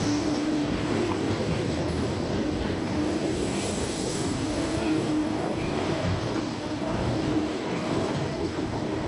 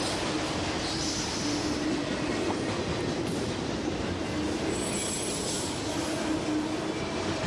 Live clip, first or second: second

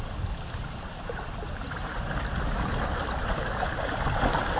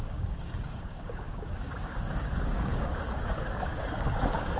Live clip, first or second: first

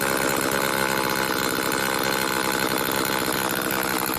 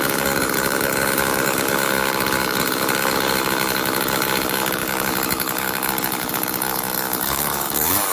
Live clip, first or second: first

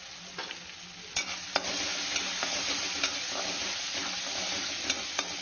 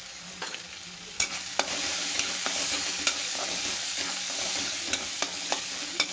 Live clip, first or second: first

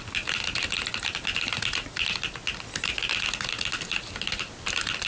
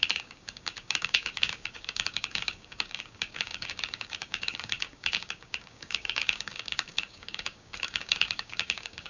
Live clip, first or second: first